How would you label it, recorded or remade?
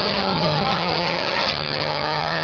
remade